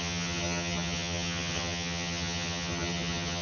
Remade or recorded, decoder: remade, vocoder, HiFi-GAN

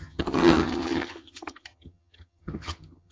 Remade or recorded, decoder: remade, vocoder, HiFi-GAN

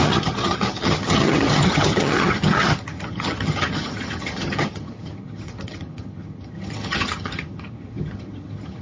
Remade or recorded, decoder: remade, vocoder, HiFi-GAN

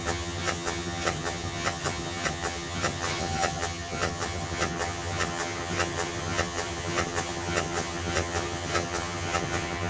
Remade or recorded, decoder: remade, vocoder, HiFi-GAN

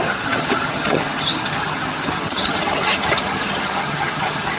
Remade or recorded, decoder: remade, vocoder, HiFi-GAN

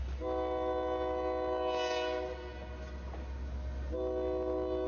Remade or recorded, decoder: recorded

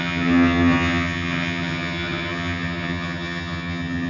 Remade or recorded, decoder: remade, vocoder, HiFi-GAN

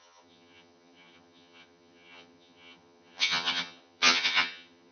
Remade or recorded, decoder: remade, vocoder, HiFi-GAN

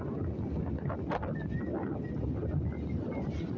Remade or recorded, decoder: recorded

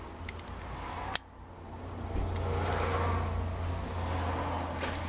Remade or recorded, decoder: recorded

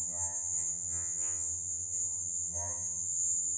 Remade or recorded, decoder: remade, vocoder, HiFi-GAN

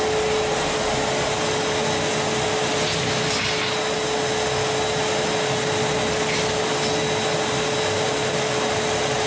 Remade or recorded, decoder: recorded